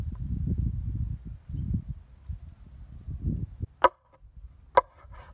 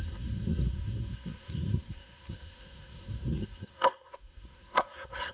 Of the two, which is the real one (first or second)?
first